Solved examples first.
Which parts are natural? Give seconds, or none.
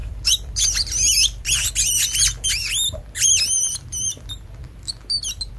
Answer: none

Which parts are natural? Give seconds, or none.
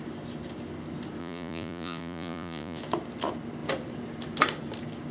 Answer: 0.0-1.2; 2.8-5.1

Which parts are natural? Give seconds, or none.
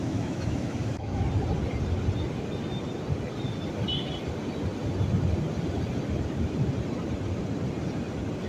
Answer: 1.2-8.5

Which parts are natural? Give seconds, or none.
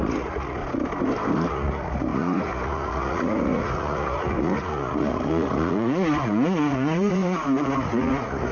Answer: 0.6-1.5